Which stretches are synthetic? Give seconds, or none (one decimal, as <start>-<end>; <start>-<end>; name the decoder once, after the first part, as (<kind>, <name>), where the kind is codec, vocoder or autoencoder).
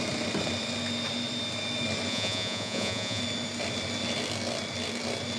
2.1-3.2 (vocoder, Vocos)